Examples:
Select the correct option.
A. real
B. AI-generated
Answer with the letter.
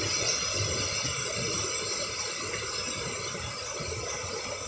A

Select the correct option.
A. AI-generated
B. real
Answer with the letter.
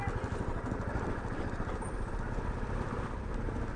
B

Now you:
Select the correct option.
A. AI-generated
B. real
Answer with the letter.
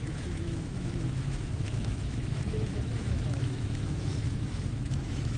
A